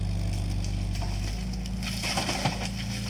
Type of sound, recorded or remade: recorded